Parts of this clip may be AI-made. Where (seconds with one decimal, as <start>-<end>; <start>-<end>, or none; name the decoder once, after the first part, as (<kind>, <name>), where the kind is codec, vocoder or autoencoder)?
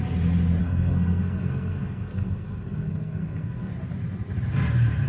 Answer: 0.6-3.7 (codec, SNAC)